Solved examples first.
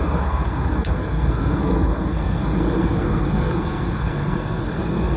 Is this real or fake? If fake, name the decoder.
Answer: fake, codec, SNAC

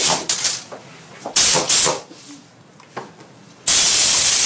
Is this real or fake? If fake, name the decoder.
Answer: real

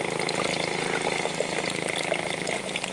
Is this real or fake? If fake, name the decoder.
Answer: real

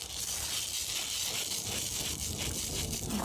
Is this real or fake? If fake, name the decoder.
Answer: real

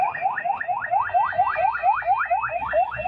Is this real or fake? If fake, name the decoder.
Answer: real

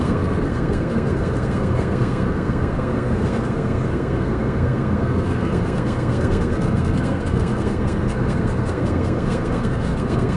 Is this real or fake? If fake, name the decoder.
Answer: fake, codec, SNAC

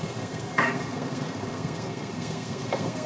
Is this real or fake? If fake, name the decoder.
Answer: fake, codec, SNAC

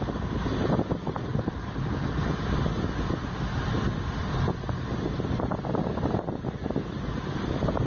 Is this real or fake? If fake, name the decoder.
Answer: real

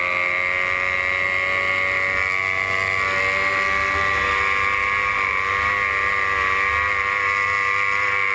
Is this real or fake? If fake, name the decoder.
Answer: real